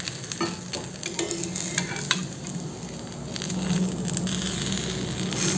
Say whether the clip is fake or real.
real